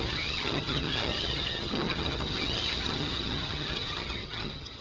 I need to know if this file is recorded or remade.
remade